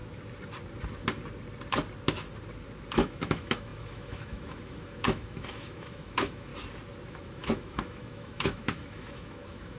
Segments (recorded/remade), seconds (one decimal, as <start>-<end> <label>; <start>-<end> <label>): 0.0-2.9 recorded; 2.9-6.5 remade; 6.5-7.1 recorded; 7.1-9.8 remade